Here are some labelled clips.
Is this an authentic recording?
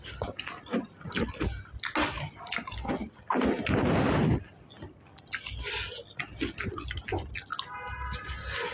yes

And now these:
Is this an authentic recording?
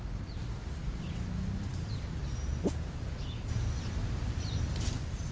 yes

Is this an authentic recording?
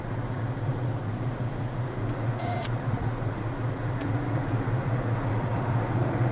no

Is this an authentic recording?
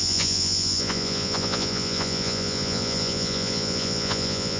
no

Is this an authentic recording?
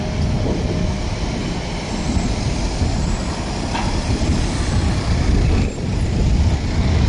yes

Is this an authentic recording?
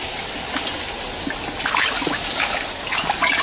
yes